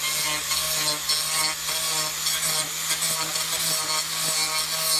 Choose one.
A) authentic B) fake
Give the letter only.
A